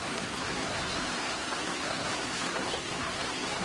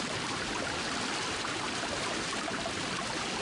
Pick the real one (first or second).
second